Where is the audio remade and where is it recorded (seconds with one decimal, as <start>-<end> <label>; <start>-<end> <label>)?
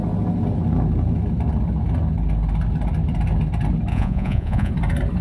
0.0-3.9 recorded; 3.9-4.7 remade; 4.7-5.2 recorded